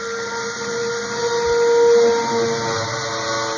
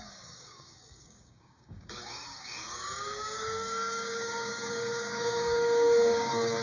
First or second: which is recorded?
first